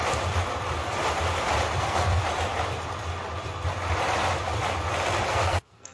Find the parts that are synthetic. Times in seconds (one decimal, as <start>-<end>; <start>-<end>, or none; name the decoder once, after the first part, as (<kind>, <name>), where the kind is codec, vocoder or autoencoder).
1.8-2.2 (codec, SNAC); 5.3-5.9